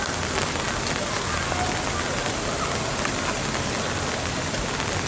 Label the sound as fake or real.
real